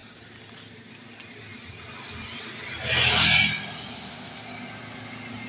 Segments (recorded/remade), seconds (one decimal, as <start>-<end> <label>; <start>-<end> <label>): 0.0-5.5 recorded